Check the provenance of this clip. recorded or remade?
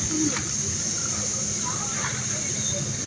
recorded